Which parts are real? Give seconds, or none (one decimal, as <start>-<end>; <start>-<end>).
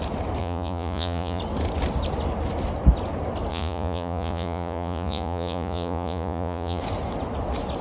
0.0-0.4; 1.4-3.5; 6.8-7.8